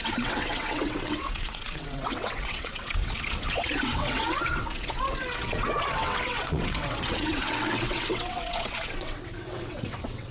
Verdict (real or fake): fake